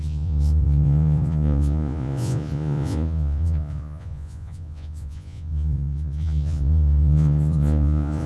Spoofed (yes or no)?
yes